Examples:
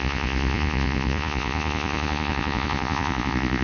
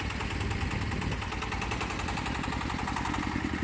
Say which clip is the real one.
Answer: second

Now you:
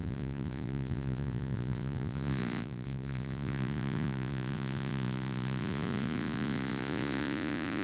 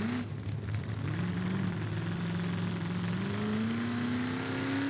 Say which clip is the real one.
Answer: second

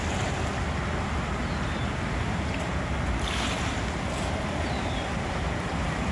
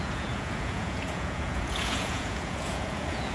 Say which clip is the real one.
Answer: first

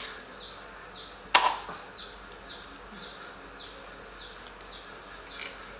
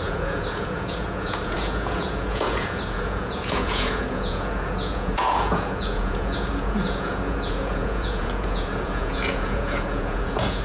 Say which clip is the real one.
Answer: first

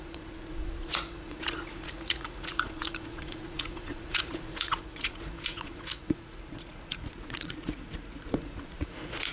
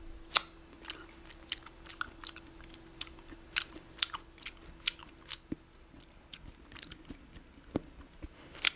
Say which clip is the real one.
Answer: second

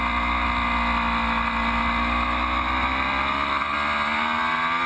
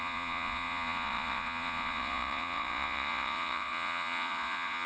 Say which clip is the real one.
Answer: first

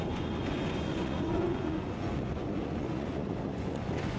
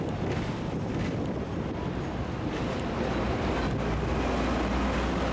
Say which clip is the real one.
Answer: second